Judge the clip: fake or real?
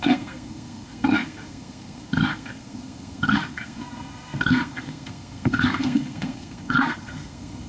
fake